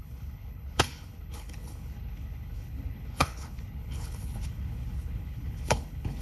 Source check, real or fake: fake